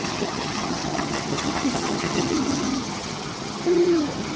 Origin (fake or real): fake